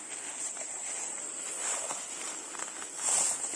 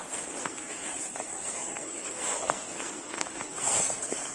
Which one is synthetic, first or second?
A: second